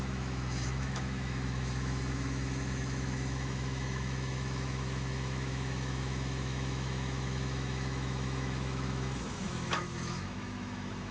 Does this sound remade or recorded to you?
remade